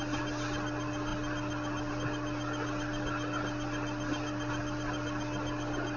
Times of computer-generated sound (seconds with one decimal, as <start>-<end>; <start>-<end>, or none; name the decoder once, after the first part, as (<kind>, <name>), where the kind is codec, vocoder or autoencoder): none